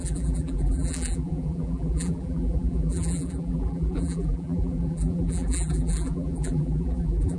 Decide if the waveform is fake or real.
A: fake